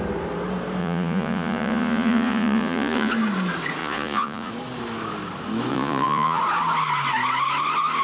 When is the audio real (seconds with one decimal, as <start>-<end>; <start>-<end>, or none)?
0.0-0.8; 3.1-3.8; 4.5-5.7; 6.4-8.0